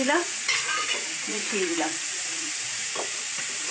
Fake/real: fake